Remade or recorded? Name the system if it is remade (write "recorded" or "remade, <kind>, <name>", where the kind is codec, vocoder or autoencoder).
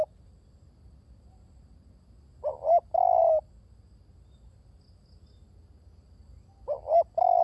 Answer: recorded